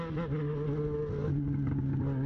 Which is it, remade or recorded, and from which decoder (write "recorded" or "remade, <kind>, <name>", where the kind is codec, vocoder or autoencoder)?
recorded